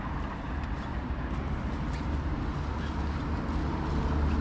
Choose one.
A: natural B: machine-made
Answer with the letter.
A